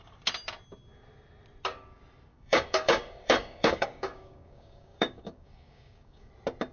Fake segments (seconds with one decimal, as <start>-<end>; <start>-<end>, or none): 2.3-6.3